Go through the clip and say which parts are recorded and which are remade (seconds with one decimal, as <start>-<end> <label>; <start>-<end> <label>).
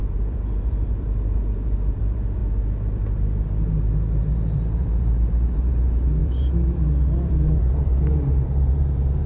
0.0-2.4 remade; 2.4-4.2 recorded; 4.2-9.3 remade